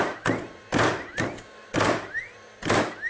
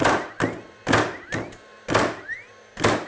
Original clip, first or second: second